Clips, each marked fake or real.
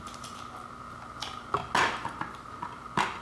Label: real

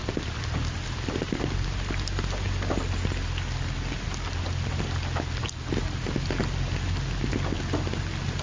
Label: real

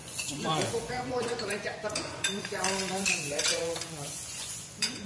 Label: fake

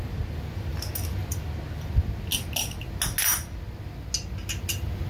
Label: real